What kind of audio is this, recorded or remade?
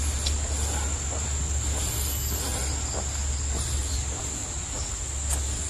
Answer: recorded